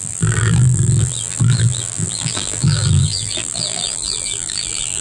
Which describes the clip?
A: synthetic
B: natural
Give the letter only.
A